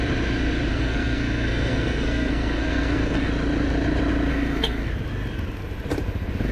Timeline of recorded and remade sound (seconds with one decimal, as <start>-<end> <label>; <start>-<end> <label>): 0.0-0.7 recorded; 0.7-3.3 remade; 3.3-4.3 recorded; 4.3-4.9 remade; 4.9-6.5 recorded